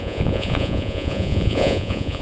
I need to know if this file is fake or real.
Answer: fake